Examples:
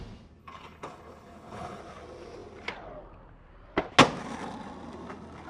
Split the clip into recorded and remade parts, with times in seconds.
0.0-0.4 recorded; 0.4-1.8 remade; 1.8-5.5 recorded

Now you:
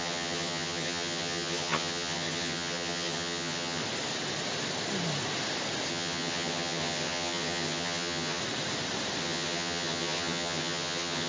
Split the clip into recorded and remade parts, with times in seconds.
0.0-3.8 remade; 3.8-5.9 recorded; 5.9-8.4 remade; 8.4-9.2 recorded; 9.2-11.3 remade